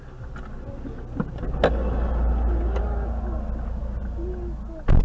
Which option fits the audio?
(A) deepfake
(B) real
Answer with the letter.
B